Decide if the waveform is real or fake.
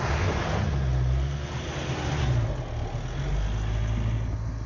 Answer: real